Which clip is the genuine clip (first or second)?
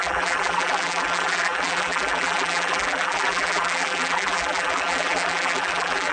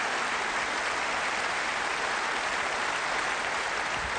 second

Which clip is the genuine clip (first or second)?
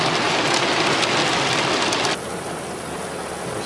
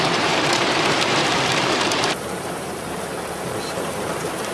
first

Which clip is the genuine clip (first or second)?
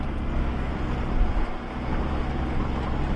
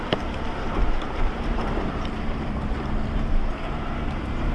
first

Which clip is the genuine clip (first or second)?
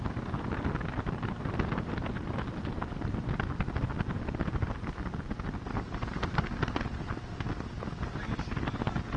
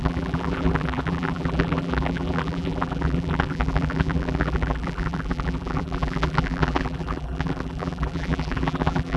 first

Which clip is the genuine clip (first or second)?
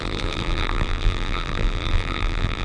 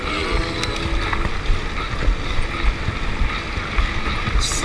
second